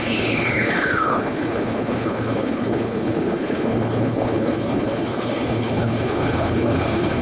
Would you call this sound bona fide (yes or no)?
no